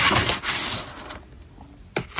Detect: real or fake real